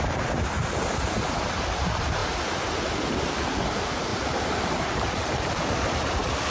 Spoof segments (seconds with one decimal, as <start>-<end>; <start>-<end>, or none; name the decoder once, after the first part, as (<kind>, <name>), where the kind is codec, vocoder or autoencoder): 0.0-0.6 (vocoder, BigVGAN v2); 1.4-2.2; 3.2-6.5